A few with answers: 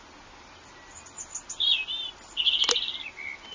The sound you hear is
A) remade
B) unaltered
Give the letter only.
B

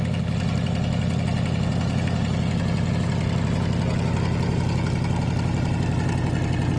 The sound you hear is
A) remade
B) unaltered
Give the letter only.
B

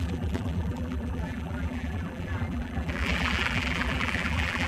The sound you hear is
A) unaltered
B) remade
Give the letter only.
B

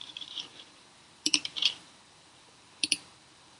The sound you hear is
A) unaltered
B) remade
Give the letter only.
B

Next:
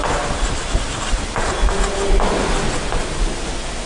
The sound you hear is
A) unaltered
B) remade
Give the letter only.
A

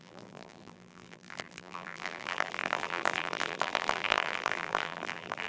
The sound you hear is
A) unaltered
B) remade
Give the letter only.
B